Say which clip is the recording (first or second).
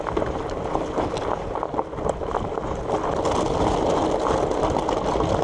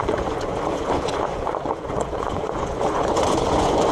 first